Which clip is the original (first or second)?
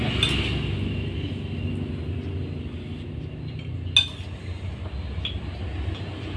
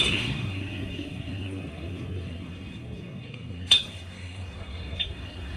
first